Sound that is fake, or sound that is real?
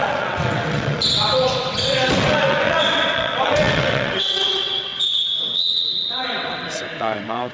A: fake